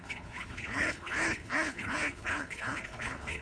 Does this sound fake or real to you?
fake